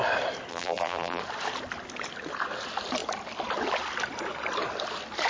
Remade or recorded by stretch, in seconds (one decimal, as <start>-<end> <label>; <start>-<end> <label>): 0.0-0.5 recorded; 0.5-1.2 remade; 1.2-5.3 recorded